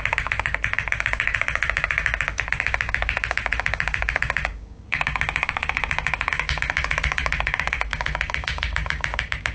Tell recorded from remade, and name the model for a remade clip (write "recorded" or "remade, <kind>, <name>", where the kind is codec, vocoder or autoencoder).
remade, codec, DAC